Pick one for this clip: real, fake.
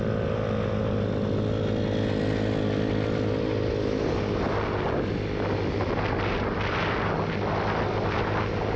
real